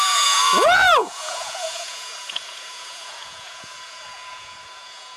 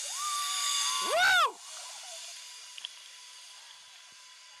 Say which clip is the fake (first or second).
first